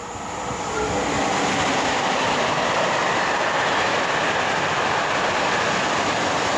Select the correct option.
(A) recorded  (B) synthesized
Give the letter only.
B